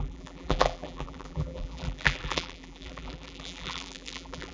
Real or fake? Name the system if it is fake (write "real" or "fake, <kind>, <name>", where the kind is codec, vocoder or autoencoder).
fake, vocoder, BigVGAN v2